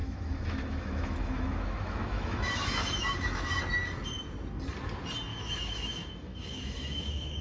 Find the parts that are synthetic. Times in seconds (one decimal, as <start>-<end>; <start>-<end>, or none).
0.0-3.6; 5.3-7.4